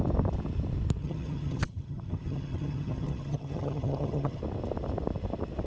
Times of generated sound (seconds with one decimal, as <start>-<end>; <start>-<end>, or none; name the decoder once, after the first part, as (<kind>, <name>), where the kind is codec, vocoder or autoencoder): 1.0-4.4 (vocoder, HiFi-GAN)